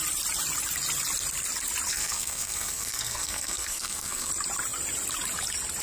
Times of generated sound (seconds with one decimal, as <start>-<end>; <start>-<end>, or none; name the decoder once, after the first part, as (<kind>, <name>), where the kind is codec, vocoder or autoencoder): 1.9-4.3 (codec, SNAC)